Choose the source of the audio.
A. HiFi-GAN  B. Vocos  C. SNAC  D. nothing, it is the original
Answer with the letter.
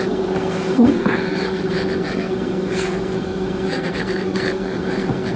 C